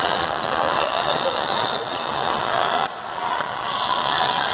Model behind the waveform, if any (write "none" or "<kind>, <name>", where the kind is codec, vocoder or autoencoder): vocoder, Vocos